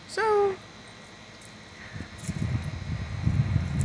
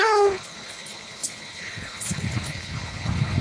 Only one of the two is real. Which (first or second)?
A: first